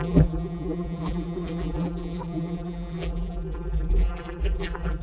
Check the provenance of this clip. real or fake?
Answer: fake